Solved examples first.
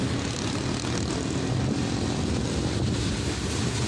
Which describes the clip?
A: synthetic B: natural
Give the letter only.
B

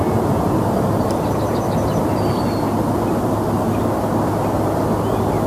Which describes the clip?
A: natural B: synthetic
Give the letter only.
A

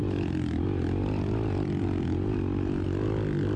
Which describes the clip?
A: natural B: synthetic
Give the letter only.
A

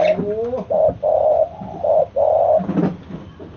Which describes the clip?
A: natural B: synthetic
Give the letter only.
A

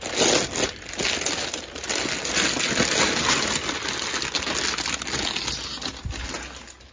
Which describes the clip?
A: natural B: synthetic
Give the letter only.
A